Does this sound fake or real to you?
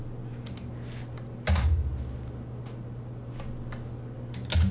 real